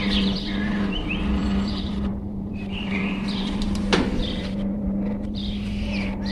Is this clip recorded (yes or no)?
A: no